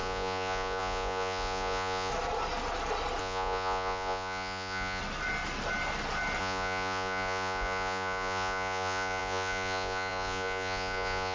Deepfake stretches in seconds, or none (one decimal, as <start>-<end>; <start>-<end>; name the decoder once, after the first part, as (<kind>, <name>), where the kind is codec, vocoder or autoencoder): 0.0-2.1 (vocoder, Vocos); 3.2-5.0; 6.4-11.3